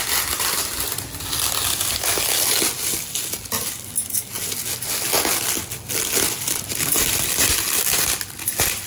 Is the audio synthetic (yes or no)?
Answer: no